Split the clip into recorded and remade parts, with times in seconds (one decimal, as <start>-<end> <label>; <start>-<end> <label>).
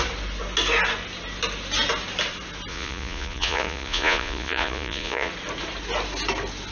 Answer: 0.0-2.7 recorded; 2.7-5.3 remade; 5.3-6.7 recorded